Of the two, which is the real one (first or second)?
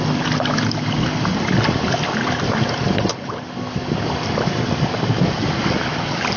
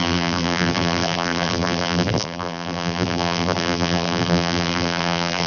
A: first